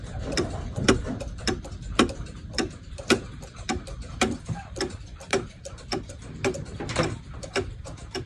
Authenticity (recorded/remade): remade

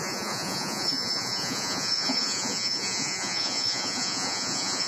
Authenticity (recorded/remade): remade